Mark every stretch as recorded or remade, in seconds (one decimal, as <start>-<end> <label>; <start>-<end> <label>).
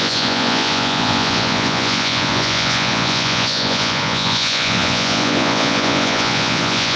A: 0.0-7.0 remade